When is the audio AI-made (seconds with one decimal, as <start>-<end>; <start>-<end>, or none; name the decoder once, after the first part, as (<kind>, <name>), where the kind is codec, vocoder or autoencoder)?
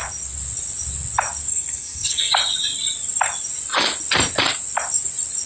1.5-2.3 (codec, SNAC)